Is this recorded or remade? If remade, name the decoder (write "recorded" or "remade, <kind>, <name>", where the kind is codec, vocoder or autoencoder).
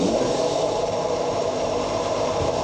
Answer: remade, vocoder, BigVGAN v2